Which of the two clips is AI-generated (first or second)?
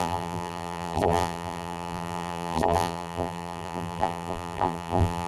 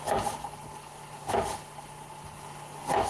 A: first